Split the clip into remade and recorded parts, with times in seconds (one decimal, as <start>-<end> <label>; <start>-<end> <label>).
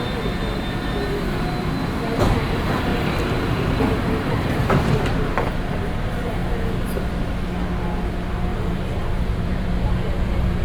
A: 0.0-2.9 recorded; 2.9-5.3 remade; 5.3-8.5 recorded; 8.5-9.7 remade; 9.7-10.6 recorded